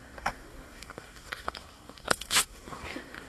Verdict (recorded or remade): remade